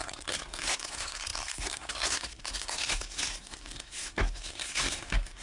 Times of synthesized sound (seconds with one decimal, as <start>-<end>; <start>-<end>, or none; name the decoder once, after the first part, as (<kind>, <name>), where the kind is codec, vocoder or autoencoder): 0.0-5.4 (codec, SNAC)